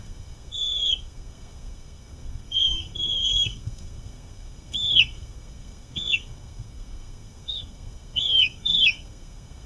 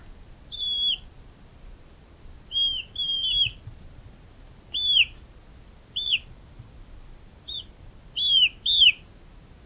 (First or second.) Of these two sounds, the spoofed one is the first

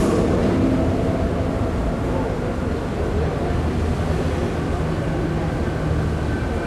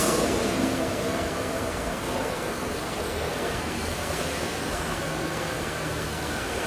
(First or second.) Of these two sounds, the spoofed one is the second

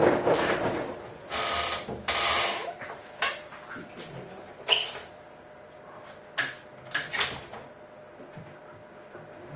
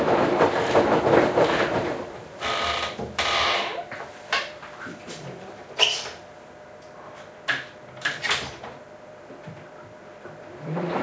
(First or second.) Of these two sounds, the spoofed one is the second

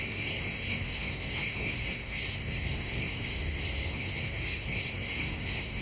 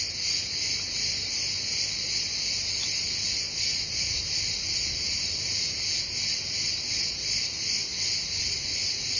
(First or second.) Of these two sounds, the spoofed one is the first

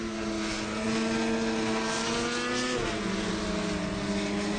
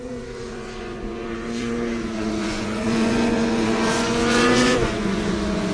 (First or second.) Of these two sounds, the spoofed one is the second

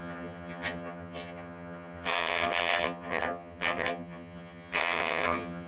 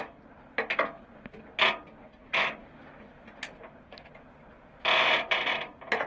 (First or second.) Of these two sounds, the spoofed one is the first